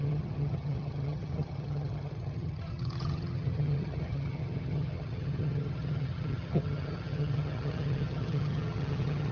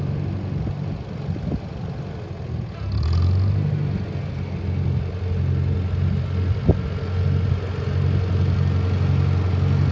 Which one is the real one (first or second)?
second